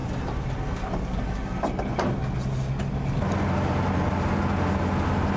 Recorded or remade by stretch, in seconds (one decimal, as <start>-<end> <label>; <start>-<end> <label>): 0.0-5.4 recorded